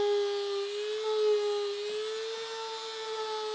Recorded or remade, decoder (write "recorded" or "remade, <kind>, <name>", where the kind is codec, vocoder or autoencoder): recorded